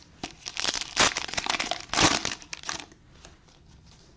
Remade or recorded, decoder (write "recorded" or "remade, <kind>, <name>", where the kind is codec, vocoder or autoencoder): recorded